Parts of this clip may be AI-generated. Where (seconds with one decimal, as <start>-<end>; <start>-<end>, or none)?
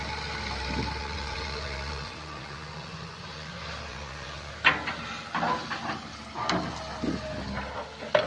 1.0-3.5; 3.9-4.5